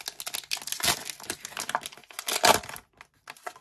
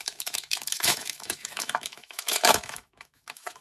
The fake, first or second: second